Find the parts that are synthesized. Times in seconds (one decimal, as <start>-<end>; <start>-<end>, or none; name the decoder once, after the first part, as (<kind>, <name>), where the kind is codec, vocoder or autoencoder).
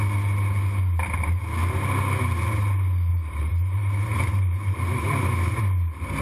3.1-5.6 (vocoder, BigVGAN v2)